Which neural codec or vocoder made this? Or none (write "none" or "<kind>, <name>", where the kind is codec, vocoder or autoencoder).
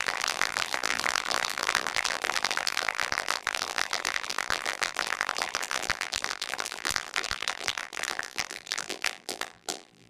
vocoder, BigVGAN v2